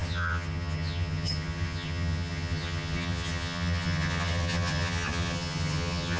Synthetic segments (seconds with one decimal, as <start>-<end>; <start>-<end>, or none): 0.0-6.2